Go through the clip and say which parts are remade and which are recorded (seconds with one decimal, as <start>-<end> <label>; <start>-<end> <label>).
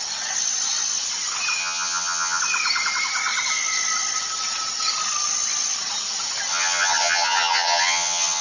0.0-1.6 recorded; 1.6-2.4 remade; 2.4-6.5 recorded; 6.5-8.4 remade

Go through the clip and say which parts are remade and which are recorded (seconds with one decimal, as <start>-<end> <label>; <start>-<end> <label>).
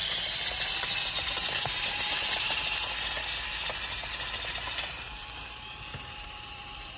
0.0-1.1 recorded; 1.1-2.8 remade; 2.8-4.5 recorded; 4.5-7.0 remade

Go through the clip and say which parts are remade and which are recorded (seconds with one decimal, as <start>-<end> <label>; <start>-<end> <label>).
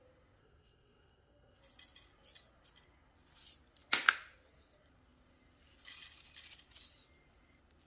0.0-0.4 recorded; 0.4-1.6 remade; 1.6-7.9 recorded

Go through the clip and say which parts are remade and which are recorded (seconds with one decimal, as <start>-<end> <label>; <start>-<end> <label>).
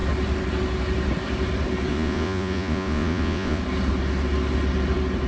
0.0-1.9 recorded; 1.9-3.6 remade; 3.6-5.3 recorded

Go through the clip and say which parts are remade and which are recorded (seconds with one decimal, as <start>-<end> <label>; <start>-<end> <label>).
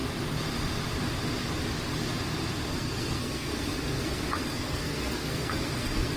0.0-2.7 recorded; 2.7-6.2 remade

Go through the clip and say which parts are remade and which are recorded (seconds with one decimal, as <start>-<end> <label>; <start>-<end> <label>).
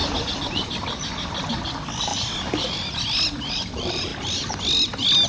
0.0-1.5 recorded; 1.5-2.1 remade; 2.1-3.5 recorded; 3.5-4.1 remade; 4.1-5.3 recorded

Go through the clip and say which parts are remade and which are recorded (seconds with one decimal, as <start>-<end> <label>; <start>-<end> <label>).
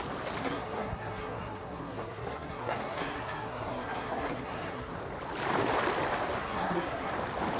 0.0-0.4 recorded; 0.4-5.0 remade; 5.0-6.4 recorded; 6.4-7.1 remade; 7.1-7.6 recorded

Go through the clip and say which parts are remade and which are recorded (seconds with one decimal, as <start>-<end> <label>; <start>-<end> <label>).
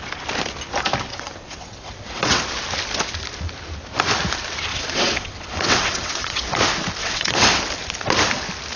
0.0-1.1 recorded; 1.1-2.4 remade; 2.4-4.7 recorded; 4.7-6.6 remade; 6.6-7.0 recorded; 7.0-7.6 remade; 7.6-8.8 recorded